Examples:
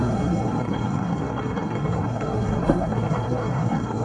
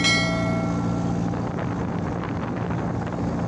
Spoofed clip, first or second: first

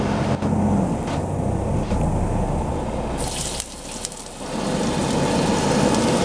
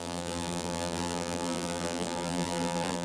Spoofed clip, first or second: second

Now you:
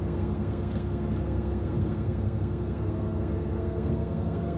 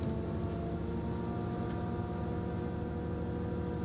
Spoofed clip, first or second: first